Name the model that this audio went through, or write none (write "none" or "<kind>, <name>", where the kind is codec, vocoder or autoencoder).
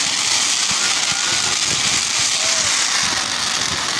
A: none